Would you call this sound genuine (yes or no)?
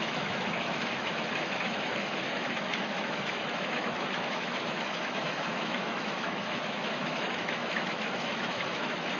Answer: no